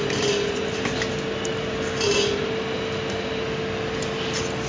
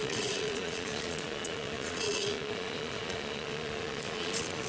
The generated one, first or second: second